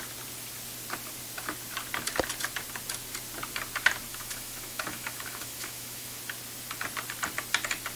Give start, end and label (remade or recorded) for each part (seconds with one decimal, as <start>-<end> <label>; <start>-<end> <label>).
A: 0.0-4.1 recorded; 4.1-6.2 remade; 6.2-8.0 recorded